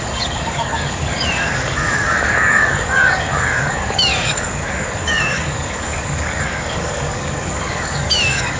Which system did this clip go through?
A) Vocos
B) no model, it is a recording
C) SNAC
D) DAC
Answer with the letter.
D